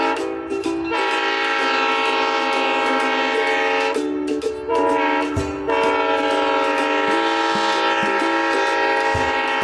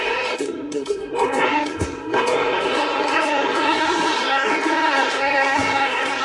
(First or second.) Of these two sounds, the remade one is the second